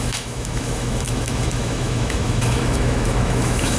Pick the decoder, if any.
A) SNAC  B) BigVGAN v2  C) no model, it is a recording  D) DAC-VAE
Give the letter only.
D